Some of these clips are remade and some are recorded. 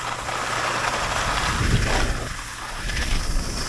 recorded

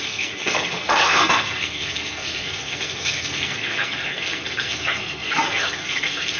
remade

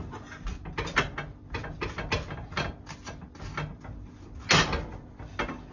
recorded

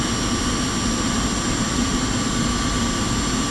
recorded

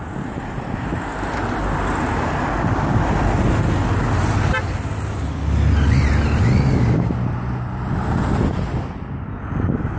recorded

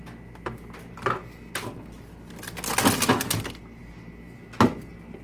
recorded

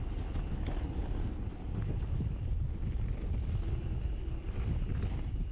recorded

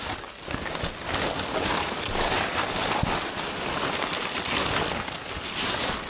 recorded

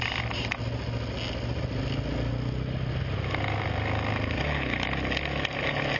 recorded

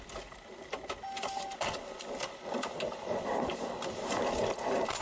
recorded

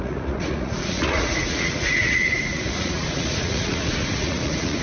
remade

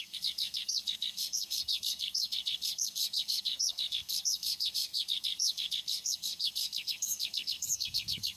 remade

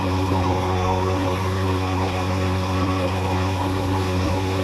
remade